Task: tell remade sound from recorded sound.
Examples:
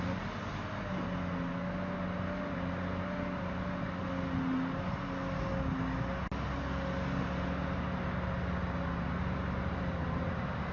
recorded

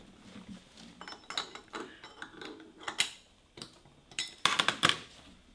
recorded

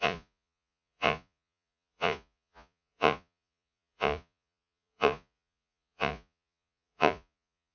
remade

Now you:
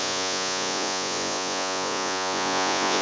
remade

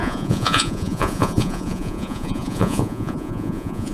remade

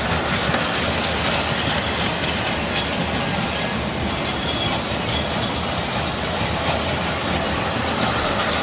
recorded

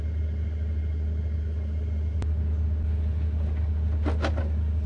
recorded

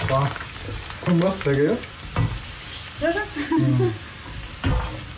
recorded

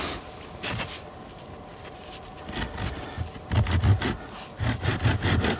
recorded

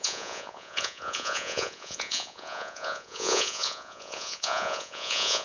remade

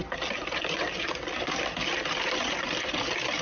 recorded